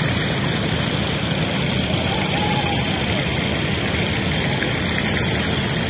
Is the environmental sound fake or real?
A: real